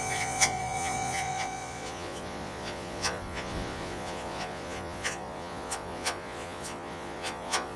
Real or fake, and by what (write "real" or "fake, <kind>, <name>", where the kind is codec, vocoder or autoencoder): fake, vocoder, Vocos